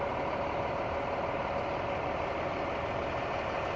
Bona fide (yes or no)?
yes